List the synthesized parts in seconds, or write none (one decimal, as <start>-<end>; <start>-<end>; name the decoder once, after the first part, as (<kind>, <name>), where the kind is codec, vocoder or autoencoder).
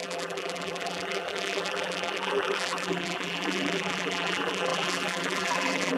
0.0-6.0 (vocoder, BigVGAN v2)